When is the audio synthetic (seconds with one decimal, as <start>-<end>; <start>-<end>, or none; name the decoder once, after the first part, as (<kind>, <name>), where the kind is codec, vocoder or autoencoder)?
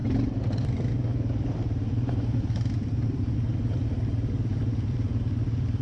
0.0-3.2 (vocoder, BigVGAN v2); 4.5-5.2